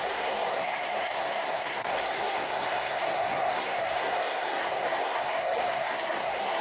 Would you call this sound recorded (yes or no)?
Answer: no